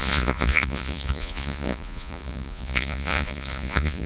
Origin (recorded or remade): remade